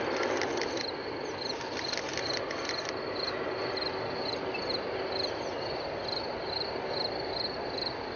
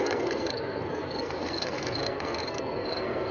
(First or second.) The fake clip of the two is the second